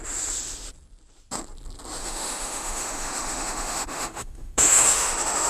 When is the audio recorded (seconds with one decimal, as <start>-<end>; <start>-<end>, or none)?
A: 0.0-2.0

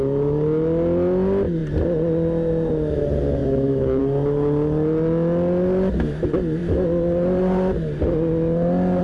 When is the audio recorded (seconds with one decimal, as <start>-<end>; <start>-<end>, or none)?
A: 0.0-3.4; 4.0-9.0

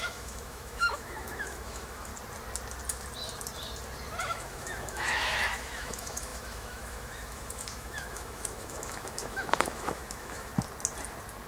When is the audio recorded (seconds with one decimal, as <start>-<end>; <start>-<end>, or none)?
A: 2.1-4.2; 10.5-11.5

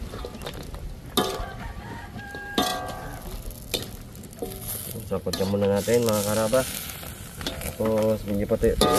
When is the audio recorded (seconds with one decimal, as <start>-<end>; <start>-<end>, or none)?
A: 0.0-9.0

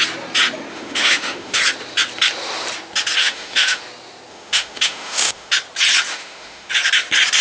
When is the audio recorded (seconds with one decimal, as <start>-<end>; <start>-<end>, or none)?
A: 0.0-0.7; 1.6-3.2; 3.8-4.3; 5.5-6.1; 6.7-7.4

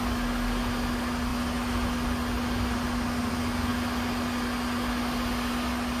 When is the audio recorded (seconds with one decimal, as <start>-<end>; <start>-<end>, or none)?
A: 0.0-6.0